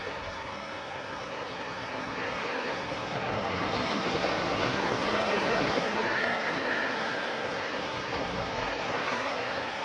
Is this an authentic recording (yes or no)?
no